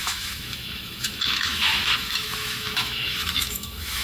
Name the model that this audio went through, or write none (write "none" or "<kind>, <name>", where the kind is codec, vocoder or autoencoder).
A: autoencoder, DAC-VAE